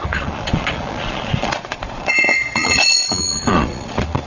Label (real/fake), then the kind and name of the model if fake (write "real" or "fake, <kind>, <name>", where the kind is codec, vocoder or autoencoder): fake, vocoder, Vocos